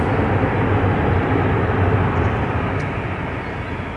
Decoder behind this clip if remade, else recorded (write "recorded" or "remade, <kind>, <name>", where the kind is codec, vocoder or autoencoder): recorded